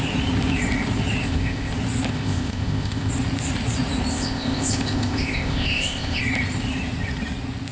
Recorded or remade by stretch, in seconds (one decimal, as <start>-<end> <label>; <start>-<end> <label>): 0.0-1.2 recorded; 1.2-1.7 remade; 1.7-2.1 recorded; 2.1-3.1 remade; 3.1-4.1 recorded; 4.1-6.2 remade; 6.2-7.7 recorded